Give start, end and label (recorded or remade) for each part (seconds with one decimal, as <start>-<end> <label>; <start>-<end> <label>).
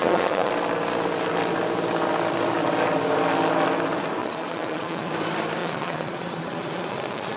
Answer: 0.0-0.5 remade; 0.5-4.2 recorded; 4.2-5.1 remade; 5.1-5.6 recorded; 5.6-7.4 remade